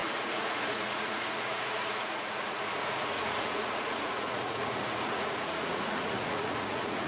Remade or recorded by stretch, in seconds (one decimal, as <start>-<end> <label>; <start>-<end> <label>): 0.0-7.1 remade